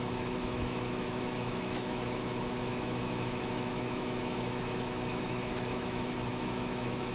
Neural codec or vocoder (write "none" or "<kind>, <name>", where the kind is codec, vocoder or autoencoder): autoencoder, DAC-VAE